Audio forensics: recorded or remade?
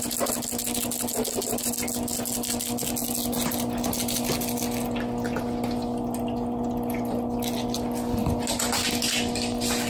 recorded